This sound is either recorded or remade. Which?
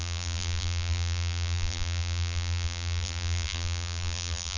remade